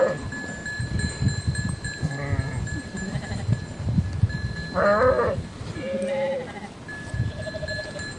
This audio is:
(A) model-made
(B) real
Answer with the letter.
B